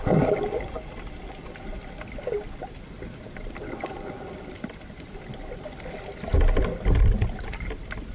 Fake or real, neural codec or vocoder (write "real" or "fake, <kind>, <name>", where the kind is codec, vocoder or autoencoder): real